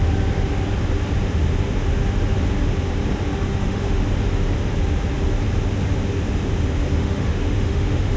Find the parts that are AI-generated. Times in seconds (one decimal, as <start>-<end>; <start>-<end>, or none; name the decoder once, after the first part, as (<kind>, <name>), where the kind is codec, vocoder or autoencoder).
3.5-4.0 (autoencoder, DAC-VAE); 7.0-8.2